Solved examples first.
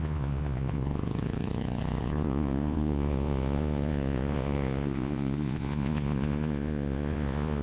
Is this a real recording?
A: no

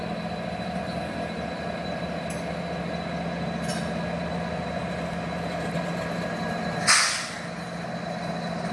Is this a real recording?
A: yes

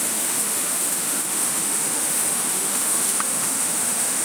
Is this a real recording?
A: no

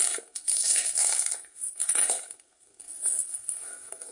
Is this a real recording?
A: no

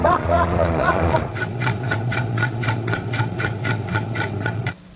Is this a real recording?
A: no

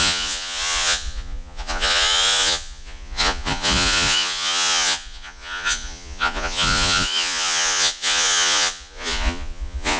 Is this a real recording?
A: no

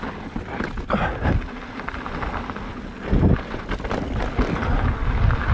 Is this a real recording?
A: yes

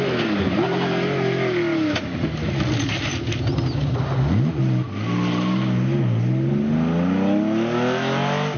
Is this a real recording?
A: yes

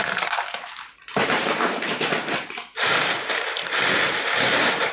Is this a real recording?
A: no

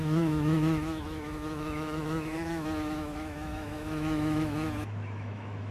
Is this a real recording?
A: no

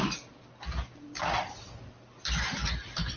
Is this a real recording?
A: yes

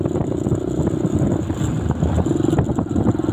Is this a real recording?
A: yes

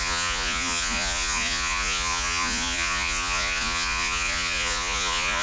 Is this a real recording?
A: no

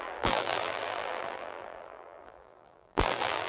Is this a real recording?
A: no